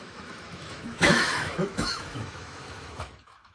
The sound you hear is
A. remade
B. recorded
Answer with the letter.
A